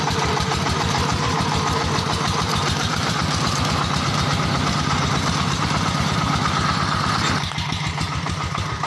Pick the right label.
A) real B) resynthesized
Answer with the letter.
B